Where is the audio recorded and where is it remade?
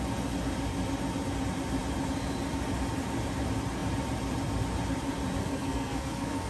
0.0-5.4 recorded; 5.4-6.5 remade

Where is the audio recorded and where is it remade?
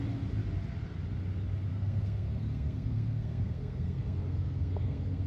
0.0-1.7 recorded; 1.7-5.3 remade